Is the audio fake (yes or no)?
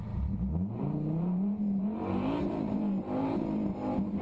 yes